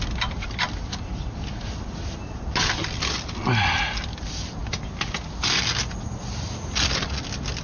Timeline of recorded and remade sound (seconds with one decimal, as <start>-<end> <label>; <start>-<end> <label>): 0.0-7.6 recorded